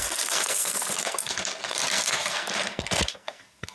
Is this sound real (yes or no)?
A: no